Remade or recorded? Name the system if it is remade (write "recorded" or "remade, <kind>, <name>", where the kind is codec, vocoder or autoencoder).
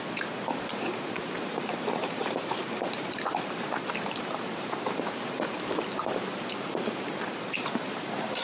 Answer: remade, vocoder, BigVGAN v2